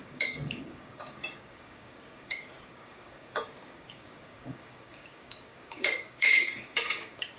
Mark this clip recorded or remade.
remade